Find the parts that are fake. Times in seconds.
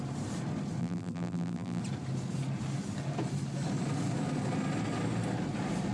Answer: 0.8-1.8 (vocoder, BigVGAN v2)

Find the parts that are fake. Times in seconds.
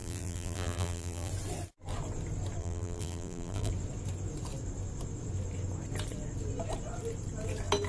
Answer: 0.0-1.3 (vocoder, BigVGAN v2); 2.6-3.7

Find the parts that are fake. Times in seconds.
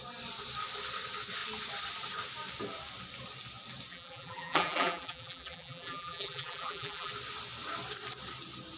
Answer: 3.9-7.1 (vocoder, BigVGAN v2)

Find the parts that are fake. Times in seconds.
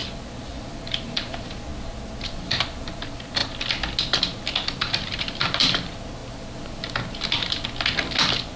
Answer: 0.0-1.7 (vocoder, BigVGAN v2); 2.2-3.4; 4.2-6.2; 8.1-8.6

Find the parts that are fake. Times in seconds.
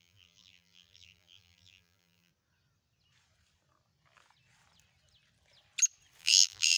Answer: 0.0-2.3 (vocoder, BigVGAN v2); 6.2-6.8